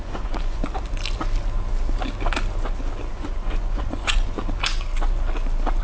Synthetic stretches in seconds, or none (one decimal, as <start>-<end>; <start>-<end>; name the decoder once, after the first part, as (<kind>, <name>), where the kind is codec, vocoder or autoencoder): 0.0-0.6 (vocoder, Vocos); 3.1-4.4